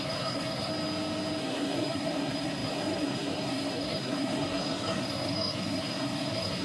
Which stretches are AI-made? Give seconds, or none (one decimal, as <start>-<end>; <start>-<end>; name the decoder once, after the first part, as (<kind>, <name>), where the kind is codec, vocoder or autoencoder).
0.0-0.7 (codec, SNAC); 1.4-6.6